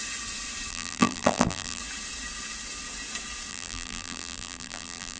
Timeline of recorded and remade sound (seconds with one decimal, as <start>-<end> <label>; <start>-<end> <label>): 0.0-0.7 recorded; 0.7-1.8 remade; 1.8-3.5 recorded; 3.5-5.2 remade